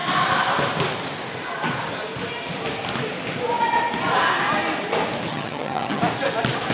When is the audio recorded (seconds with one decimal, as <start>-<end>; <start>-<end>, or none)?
0.0-5.3; 6.0-6.7